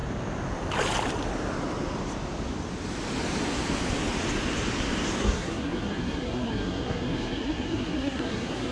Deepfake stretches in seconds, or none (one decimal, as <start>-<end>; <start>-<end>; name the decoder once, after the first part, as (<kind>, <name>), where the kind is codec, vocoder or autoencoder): 5.2-8.7 (codec, SNAC)